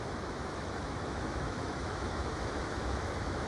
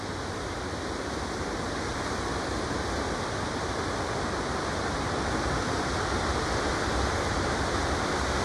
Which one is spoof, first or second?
first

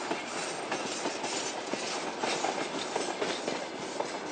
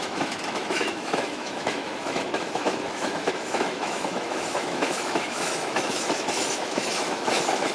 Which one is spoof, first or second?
second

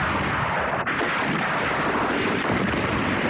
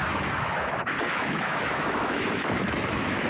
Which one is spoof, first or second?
second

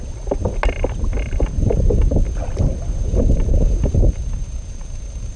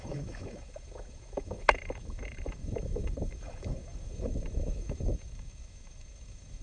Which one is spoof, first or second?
second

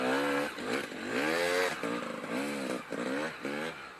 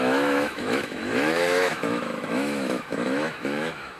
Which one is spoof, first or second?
second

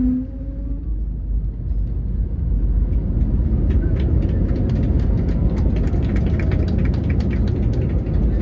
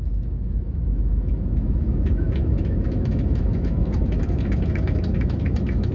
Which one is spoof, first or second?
second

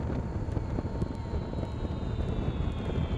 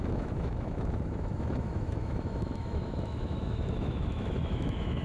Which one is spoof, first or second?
second